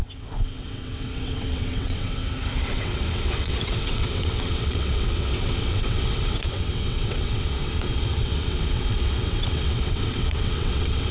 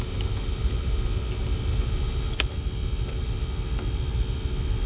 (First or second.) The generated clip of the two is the first